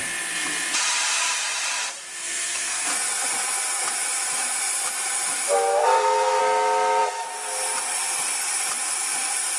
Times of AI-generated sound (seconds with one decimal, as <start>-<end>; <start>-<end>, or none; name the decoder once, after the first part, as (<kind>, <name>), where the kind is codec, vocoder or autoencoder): 2.2-2.9 (codec, SNAC); 5.8-6.4